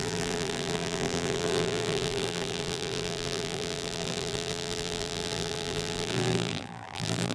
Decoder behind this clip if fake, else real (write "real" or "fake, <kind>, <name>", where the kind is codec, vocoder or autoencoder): fake, vocoder, BigVGAN v2